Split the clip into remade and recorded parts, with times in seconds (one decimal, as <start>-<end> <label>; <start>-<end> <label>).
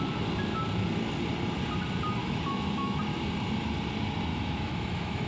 0.0-2.2 recorded; 2.2-3.0 remade; 3.0-4.3 recorded; 4.3-5.3 remade